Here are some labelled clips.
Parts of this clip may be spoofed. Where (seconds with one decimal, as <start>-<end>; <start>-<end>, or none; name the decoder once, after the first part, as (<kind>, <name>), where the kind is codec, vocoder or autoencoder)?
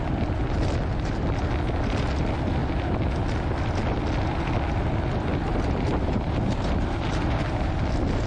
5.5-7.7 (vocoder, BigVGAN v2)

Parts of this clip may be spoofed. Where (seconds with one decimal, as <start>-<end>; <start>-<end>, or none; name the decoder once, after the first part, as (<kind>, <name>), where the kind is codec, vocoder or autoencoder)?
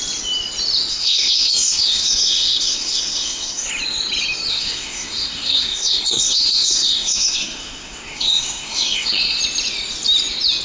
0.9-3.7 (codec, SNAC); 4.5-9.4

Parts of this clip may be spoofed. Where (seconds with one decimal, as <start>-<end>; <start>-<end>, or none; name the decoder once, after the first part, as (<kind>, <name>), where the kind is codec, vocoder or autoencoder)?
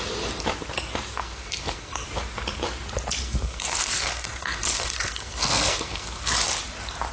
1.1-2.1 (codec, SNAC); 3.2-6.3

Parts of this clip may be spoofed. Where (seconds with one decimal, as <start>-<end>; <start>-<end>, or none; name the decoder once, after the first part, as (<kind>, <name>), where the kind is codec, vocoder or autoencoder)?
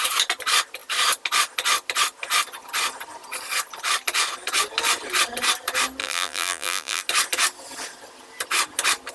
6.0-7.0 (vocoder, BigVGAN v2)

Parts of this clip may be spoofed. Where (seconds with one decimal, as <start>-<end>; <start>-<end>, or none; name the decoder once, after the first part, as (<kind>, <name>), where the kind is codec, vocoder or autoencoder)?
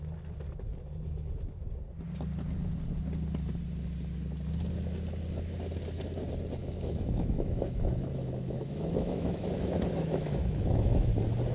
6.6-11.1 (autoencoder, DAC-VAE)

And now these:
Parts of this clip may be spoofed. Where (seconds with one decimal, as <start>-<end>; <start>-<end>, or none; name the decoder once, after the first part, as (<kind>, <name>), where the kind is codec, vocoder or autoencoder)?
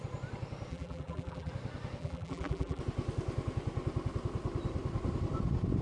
0.7-1.5 (vocoder, BigVGAN v2); 2.0-2.8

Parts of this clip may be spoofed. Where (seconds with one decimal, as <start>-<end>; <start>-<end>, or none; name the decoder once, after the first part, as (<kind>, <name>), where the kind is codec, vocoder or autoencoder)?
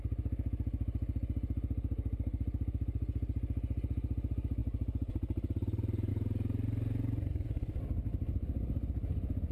none